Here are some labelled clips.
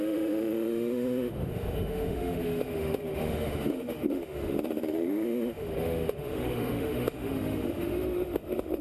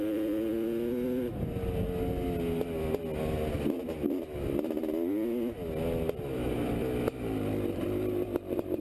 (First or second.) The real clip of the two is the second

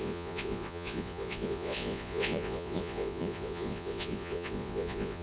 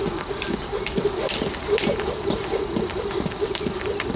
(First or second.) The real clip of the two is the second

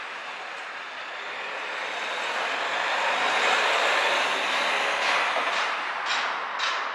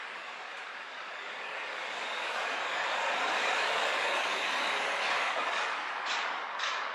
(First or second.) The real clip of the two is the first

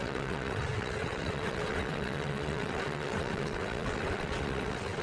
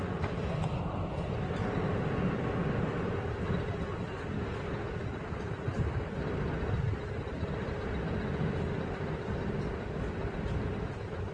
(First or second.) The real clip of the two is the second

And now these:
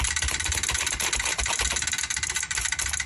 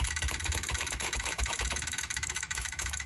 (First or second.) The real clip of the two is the first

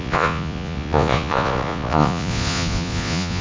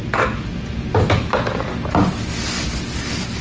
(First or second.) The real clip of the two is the second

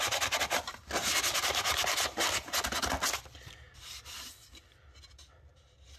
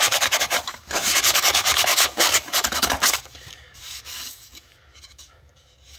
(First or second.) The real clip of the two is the first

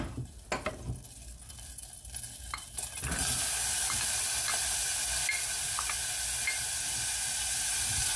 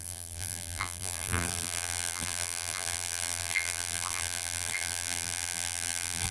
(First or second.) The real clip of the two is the first